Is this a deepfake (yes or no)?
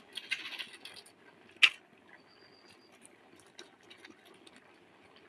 no